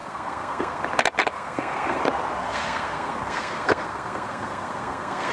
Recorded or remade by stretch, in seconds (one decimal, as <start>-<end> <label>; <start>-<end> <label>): 0.0-0.8 remade; 0.8-1.3 recorded; 1.3-2.0 remade; 2.0-2.4 recorded; 2.4-5.3 remade